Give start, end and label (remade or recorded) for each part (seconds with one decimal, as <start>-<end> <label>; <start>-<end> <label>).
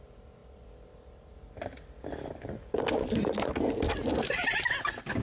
0.0-5.2 recorded